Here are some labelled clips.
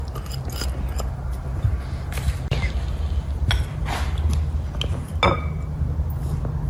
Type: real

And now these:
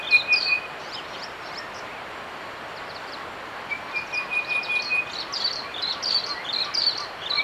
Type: fake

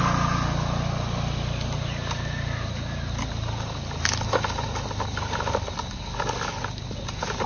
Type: real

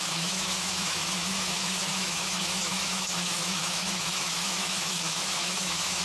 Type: fake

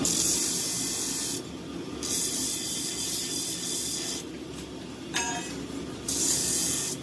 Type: real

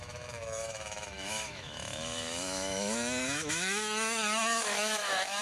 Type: fake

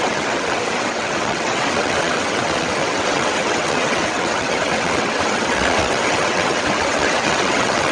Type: fake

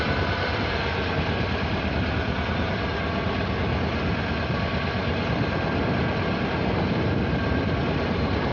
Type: real